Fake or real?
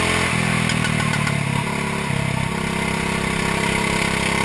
real